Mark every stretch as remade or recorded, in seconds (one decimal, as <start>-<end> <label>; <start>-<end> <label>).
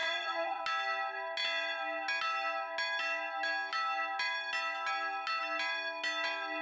0.0-0.6 remade; 0.6-6.6 recorded